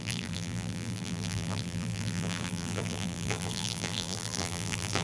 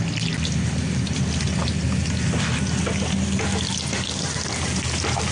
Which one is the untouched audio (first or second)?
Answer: second